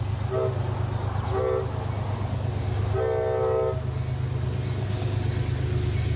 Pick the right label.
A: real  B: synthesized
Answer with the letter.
A